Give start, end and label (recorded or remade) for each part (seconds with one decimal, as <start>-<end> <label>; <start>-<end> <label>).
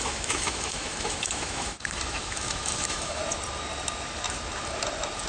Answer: 0.0-3.2 remade; 3.2-5.3 recorded